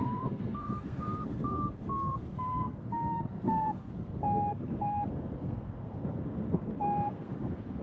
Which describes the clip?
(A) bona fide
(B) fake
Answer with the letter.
B